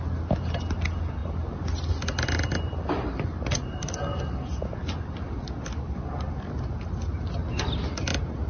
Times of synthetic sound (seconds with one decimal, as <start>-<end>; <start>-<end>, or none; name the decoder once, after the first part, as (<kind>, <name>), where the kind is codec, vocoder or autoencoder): none

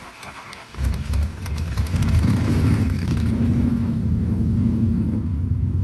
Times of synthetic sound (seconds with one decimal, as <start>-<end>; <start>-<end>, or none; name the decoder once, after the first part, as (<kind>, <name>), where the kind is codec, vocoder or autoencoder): 0.0-5.8 (codec, DAC)

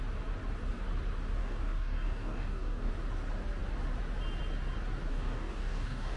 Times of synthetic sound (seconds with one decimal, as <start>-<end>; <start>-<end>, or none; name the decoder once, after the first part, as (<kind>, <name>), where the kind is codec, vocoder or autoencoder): 1.4-2.9 (codec, DAC); 5.1-6.2

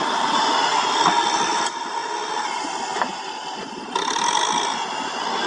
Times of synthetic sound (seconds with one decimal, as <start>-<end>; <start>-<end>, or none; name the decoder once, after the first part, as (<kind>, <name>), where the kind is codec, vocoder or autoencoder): none

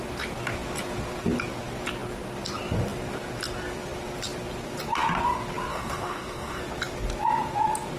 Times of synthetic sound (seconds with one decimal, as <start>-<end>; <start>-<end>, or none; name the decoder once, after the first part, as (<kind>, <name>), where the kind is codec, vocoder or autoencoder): 5.7-6.6 (codec, DAC)

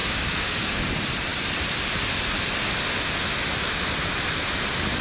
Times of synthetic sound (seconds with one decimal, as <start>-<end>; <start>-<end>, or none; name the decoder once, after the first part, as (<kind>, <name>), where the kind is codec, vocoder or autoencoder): 0.0-0.8 (codec, DAC)

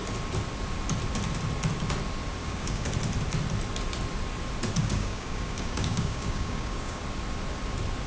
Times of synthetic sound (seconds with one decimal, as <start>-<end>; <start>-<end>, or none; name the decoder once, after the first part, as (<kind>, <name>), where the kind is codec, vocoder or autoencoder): 2.4-2.9 (codec, DAC); 4.8-7.0